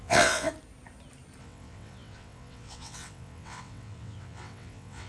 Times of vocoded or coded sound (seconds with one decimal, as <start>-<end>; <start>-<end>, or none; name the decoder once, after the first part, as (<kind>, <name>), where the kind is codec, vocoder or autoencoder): 0.0-0.5 (vocoder, WaveNeXt); 1.4-5.1

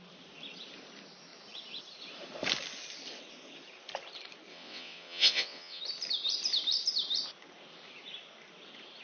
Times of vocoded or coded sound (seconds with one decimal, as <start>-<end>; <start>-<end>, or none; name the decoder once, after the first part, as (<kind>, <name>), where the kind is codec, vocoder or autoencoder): 4.5-5.8 (vocoder, WaveNeXt)

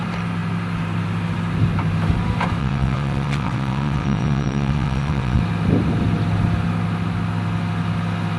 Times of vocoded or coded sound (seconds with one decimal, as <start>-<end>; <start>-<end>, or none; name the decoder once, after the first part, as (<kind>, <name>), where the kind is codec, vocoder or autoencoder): 2.6-5.4 (vocoder, WaveNeXt)

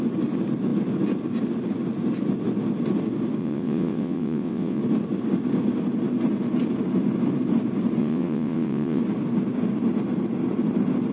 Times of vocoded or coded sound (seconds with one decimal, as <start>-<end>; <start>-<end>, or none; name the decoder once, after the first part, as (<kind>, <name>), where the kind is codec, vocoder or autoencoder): 3.4-4.8 (vocoder, WaveNeXt); 8.0-9.0

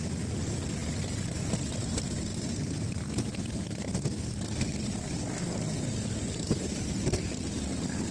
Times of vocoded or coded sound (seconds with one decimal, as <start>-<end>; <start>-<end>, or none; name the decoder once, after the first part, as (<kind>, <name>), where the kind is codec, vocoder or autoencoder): none

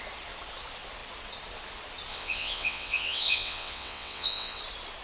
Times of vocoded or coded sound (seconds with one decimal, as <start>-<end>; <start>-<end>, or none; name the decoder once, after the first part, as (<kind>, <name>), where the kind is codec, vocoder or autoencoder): 2.1-4.6 (vocoder, WaveNeXt)